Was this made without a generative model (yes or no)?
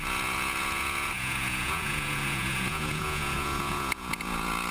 no